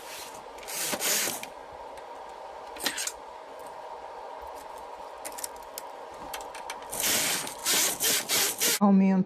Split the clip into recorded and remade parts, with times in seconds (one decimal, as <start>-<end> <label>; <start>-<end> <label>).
0.0-9.3 recorded